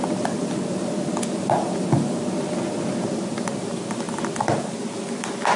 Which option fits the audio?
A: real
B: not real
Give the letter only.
A